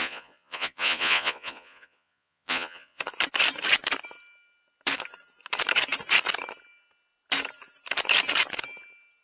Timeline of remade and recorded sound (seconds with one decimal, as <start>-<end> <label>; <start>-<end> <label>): 0.0-3.0 remade; 3.0-9.2 recorded